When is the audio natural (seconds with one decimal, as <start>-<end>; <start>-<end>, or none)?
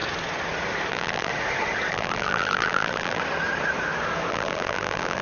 0.0-0.9; 1.3-1.9; 3.2-4.3